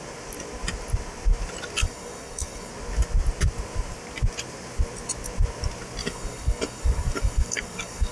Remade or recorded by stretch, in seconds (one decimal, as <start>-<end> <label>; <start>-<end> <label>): 0.0-1.8 recorded; 1.8-2.7 remade; 2.7-6.0 recorded; 6.0-8.1 remade